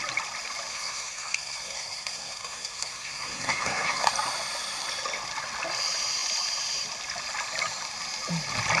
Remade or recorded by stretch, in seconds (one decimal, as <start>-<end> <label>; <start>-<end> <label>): 0.0-0.7 recorded; 0.7-4.1 remade; 4.1-8.8 recorded